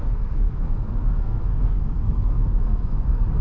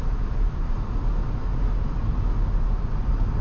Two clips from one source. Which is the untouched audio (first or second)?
second